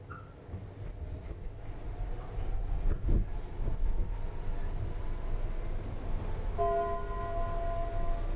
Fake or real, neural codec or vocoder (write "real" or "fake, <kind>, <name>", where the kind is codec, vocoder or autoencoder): real